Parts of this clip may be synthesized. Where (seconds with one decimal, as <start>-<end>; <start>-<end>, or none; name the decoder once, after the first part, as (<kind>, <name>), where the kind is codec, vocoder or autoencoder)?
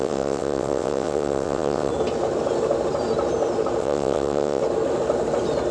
0.0-1.9 (vocoder, WaveNeXt); 3.8-4.6